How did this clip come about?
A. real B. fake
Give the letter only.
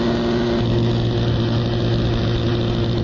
A